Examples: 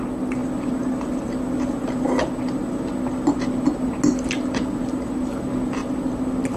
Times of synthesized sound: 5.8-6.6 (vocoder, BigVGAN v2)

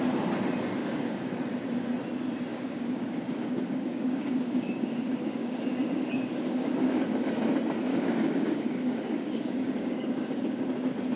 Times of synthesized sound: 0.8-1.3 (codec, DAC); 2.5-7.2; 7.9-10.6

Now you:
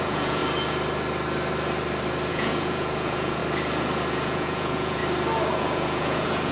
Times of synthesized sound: 0.0-0.4 (vocoder, Vocos); 2.3-3.4; 4.1-5.0; 5.5-6.5